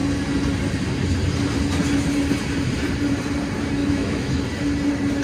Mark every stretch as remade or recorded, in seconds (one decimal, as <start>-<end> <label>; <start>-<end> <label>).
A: 0.0-3.8 recorded; 3.8-4.4 remade; 4.4-5.2 recorded